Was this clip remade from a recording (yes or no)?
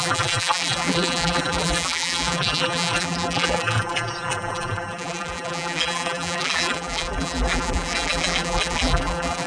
yes